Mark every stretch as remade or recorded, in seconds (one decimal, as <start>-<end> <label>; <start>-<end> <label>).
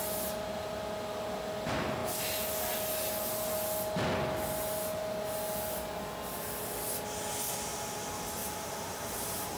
0.0-8.4 recorded; 8.4-9.6 remade